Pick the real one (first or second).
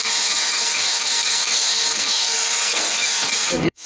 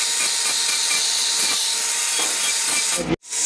second